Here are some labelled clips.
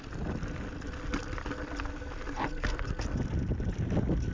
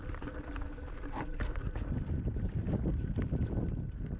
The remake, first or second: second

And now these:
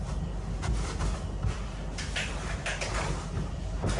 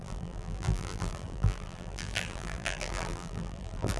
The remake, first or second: second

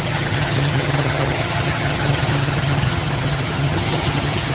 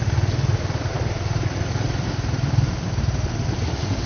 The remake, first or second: first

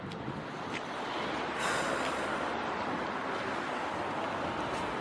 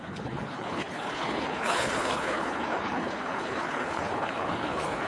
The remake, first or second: second